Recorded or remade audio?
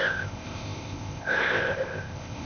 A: remade